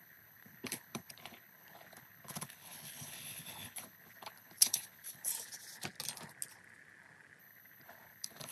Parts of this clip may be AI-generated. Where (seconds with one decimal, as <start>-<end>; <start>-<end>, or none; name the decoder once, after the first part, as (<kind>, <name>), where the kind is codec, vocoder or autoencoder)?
0.0-5.3 (codec, HILCodec); 7.4-8.5